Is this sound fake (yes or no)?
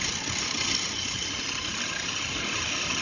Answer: no